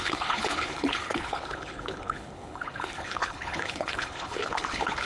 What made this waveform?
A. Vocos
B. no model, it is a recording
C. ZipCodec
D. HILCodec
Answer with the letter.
D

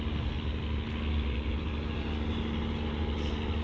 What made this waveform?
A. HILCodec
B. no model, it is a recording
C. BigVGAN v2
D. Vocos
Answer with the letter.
B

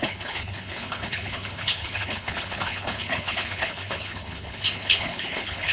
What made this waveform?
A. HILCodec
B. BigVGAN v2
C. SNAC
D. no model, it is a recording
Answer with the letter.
A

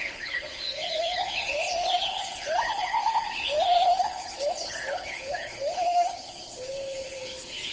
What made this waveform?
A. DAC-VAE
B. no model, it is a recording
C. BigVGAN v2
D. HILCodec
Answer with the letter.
D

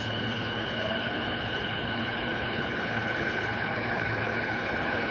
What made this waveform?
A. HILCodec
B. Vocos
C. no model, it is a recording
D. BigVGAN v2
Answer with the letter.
A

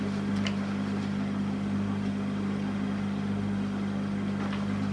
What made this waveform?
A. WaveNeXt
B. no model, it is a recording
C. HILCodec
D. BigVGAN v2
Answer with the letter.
B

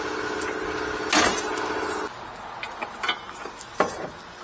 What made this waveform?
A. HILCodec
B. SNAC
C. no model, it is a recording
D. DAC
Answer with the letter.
C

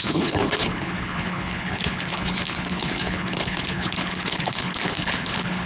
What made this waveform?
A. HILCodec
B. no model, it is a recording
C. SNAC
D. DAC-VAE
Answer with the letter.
A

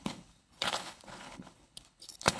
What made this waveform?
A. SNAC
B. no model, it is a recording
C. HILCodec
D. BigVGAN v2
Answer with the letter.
C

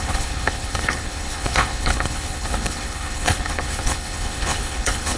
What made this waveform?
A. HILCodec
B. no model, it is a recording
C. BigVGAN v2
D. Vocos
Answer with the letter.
A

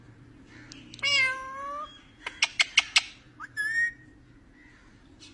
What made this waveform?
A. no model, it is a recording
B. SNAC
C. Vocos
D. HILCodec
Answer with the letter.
A